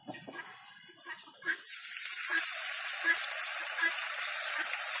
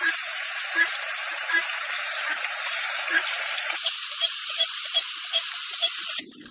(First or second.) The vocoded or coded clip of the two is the second